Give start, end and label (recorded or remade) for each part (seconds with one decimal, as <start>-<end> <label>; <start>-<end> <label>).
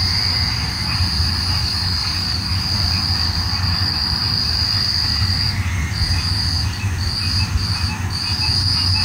0.0-1.6 recorded; 1.6-2.6 remade; 2.6-9.0 recorded